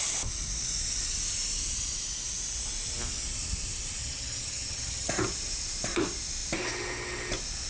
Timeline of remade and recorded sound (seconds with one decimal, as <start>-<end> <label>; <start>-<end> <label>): 0.0-4.0 recorded; 4.0-5.1 remade; 5.1-7.7 recorded